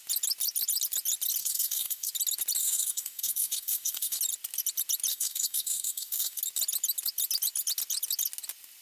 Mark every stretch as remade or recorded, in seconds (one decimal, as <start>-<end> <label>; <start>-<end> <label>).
0.0-1.4 recorded; 1.4-2.1 remade; 2.1-2.6 recorded; 2.6-4.2 remade; 4.2-5.1 recorded; 5.1-6.4 remade; 6.4-8.8 recorded